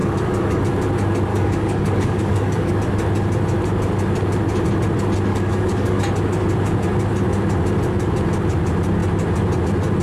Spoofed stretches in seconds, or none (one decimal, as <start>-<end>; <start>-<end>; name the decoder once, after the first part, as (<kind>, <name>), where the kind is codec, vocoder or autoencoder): 0.0-0.6 (codec, DAC); 1.3-2.7; 5.3-6.0